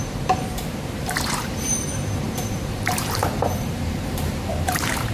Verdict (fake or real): fake